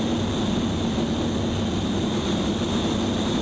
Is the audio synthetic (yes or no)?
no